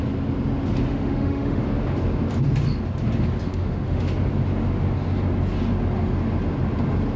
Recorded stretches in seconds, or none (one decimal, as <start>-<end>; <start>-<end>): 0.0-0.9; 1.6-3.5; 4.1-7.2